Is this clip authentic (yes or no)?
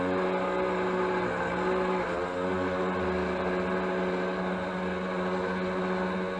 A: yes